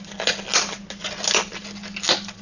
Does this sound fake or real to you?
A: real